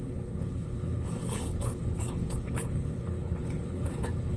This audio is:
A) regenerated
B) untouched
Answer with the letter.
A